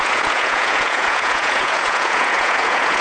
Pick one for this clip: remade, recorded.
remade